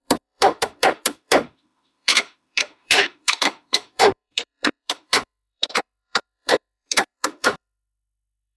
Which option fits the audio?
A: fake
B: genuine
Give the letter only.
A